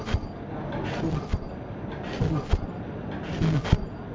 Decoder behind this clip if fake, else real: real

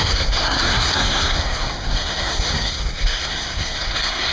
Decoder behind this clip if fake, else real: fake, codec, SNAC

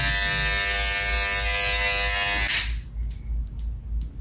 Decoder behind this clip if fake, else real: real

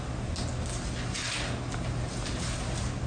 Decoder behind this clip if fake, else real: real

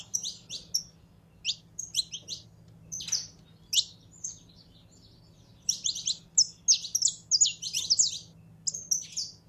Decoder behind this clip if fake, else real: real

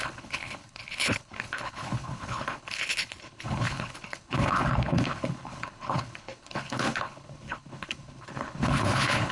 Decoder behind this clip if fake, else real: fake, codec, HILCodec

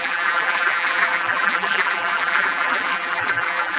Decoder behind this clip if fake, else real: fake, vocoder, BigVGAN v2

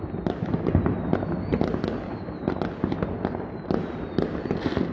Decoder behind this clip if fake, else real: real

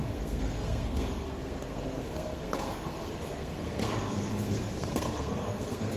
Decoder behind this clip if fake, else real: fake, codec, SNAC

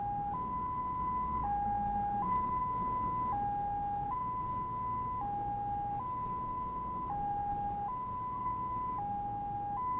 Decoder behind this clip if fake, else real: real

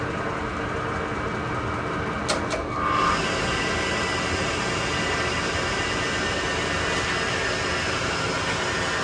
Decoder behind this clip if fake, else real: real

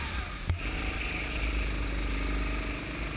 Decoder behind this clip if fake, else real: real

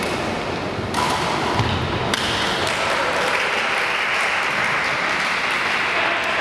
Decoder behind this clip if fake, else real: real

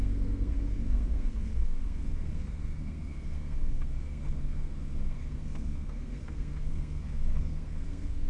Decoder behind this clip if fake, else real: fake, codec, SNAC